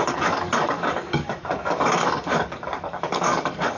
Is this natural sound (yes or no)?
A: no